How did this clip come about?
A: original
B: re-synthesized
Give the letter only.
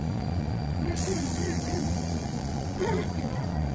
B